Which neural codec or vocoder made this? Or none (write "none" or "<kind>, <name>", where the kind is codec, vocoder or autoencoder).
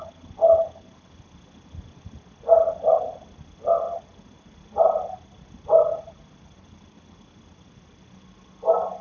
none